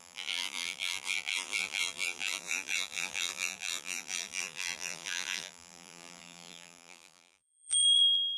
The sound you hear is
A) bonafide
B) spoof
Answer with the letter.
B